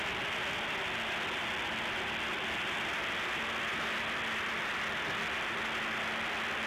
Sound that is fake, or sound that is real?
real